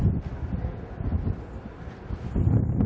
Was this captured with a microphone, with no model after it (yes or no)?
yes